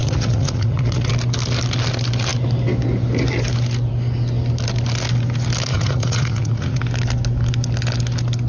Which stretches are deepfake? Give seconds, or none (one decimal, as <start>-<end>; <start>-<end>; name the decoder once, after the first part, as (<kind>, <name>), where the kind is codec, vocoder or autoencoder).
0.0-1.1 (vocoder, Vocos); 5.7-6.8